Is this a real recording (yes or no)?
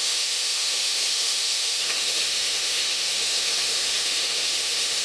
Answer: no